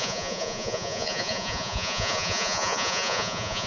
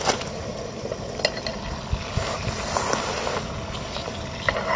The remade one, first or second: first